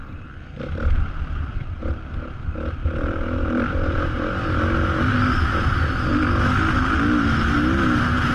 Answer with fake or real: real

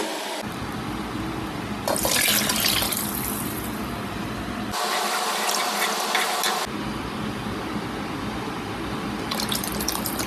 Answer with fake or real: real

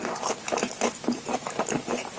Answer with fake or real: fake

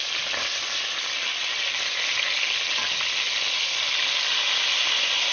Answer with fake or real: real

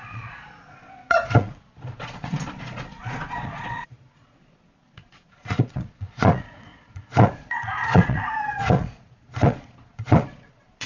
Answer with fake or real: fake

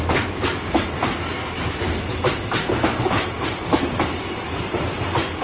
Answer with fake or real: real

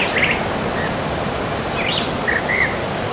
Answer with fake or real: fake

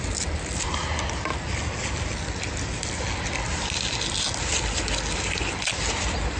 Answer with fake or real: real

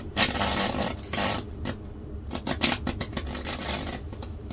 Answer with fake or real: fake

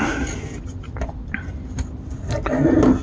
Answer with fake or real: real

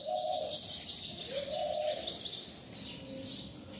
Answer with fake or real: real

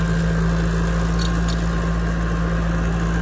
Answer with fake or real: real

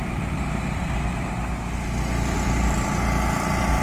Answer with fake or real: real